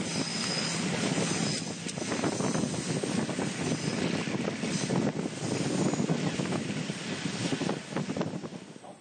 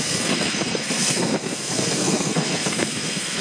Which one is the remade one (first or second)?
second